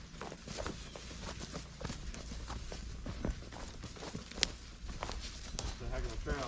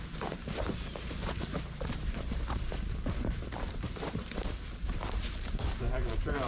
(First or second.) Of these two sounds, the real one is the first